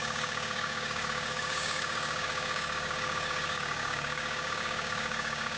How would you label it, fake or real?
fake